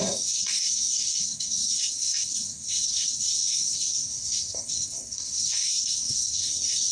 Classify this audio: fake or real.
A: fake